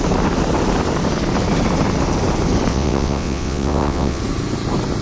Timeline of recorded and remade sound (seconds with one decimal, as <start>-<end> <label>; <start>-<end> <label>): 0.0-2.7 recorded; 2.7-4.2 remade; 4.2-5.0 recorded